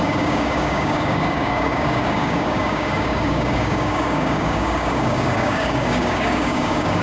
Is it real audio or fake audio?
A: fake